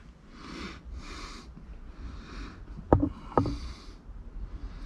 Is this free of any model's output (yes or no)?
yes